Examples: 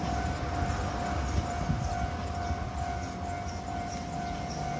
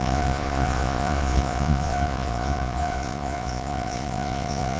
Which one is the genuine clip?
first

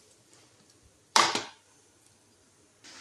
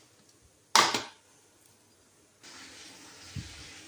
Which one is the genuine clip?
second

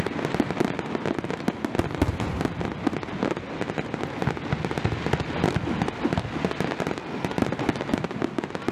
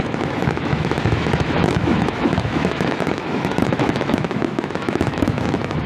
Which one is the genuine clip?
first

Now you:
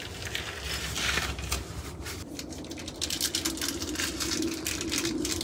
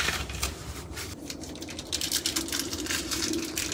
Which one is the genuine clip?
first